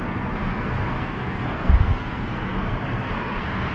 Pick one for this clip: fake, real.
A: fake